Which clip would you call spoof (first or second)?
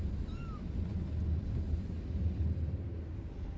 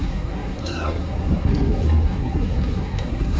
second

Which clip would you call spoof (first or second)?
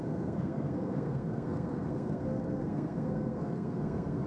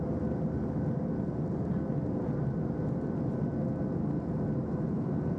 first